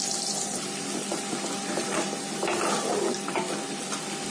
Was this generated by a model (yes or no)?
no